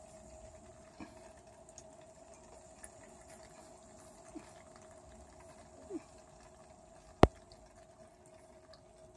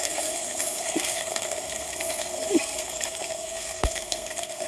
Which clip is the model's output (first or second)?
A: second